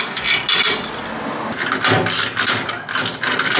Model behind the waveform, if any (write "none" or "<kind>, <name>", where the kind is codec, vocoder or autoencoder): none